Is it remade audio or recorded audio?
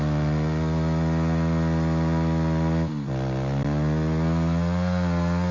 recorded